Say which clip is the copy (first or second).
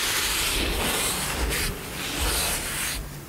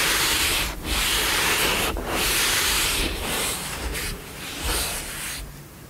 second